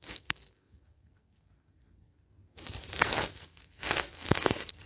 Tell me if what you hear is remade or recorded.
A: remade